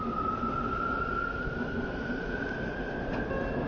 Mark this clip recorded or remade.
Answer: recorded